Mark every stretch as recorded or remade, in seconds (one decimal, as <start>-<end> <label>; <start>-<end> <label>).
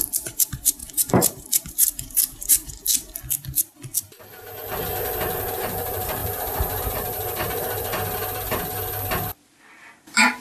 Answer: 0.0-2.9 remade; 2.9-5.5 recorded; 5.5-7.9 remade; 7.9-10.4 recorded